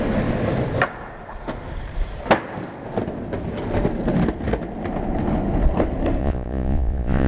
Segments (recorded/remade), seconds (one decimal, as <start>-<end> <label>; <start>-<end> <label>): 0.0-6.2 recorded; 6.2-7.3 remade

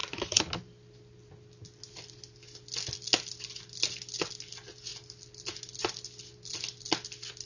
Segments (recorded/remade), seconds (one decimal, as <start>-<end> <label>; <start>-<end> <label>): 0.0-7.5 recorded

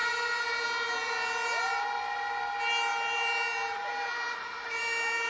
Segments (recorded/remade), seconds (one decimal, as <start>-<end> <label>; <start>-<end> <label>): 0.0-5.3 recorded

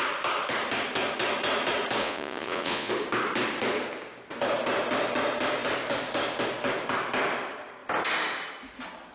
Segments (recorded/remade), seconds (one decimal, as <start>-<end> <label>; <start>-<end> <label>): 0.0-2.0 recorded; 2.0-2.9 remade; 2.9-9.1 recorded

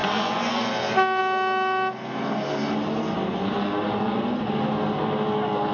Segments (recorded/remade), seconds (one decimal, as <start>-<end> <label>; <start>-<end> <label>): 0.0-0.7 remade; 0.7-5.7 recorded